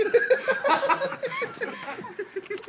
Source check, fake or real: real